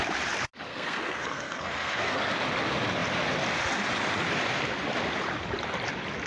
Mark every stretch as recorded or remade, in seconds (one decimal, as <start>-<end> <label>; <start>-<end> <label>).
0.0-0.7 recorded; 0.7-2.2 remade; 2.2-6.3 recorded